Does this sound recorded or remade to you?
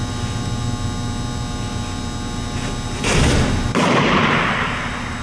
recorded